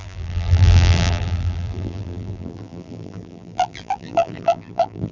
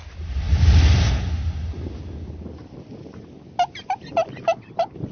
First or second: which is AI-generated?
first